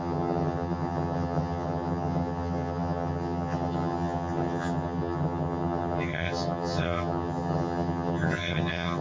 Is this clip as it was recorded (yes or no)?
no